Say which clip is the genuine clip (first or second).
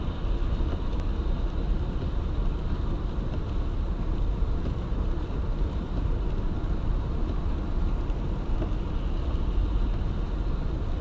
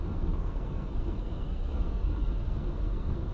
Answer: first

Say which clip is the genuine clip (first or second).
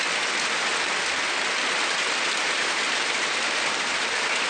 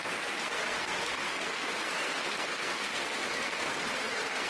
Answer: first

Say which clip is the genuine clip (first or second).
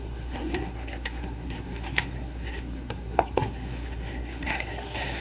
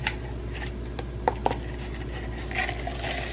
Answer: second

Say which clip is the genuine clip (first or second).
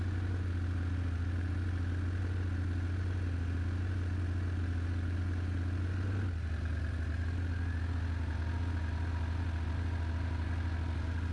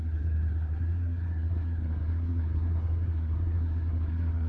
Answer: first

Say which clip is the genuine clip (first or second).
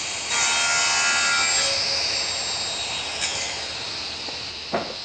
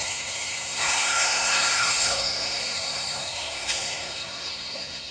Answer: first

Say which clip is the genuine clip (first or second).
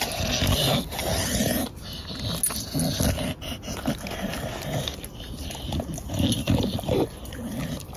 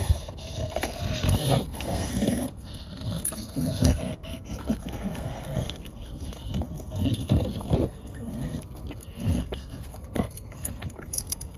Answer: first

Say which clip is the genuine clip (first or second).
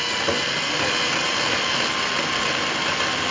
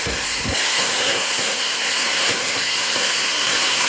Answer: first